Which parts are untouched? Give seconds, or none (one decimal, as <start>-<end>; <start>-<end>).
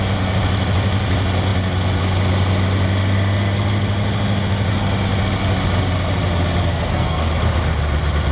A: 0.0-6.7; 7.2-8.3